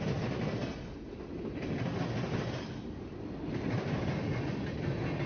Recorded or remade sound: recorded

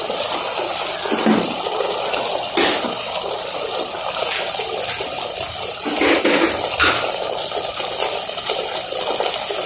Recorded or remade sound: recorded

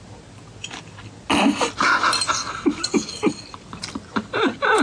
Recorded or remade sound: recorded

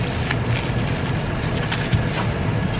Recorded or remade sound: recorded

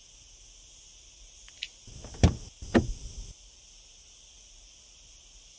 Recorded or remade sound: recorded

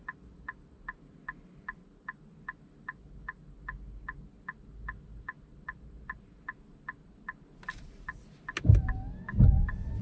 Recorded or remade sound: recorded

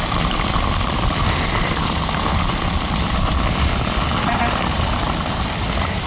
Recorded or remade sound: remade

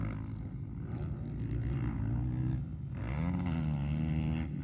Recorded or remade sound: recorded